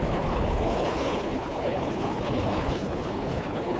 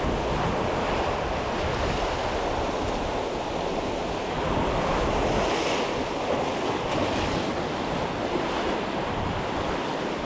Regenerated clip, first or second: first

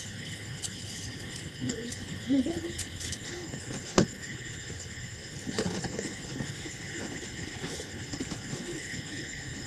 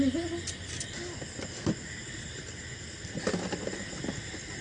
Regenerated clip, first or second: first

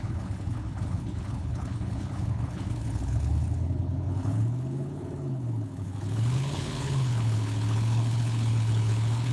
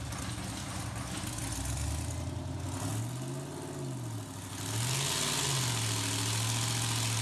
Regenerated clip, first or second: first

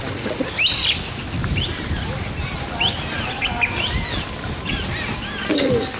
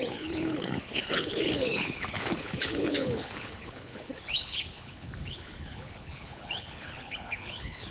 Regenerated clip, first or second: second